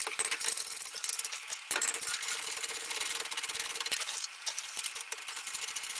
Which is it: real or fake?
real